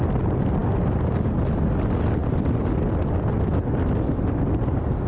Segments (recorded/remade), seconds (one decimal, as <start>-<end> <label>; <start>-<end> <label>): 0.0-5.1 recorded